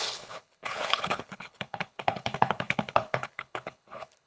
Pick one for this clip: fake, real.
fake